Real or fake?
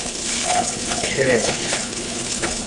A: fake